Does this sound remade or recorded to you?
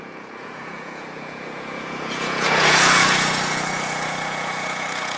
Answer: remade